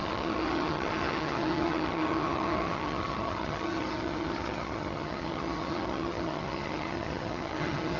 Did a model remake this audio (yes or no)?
yes